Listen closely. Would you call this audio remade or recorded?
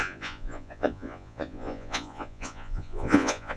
remade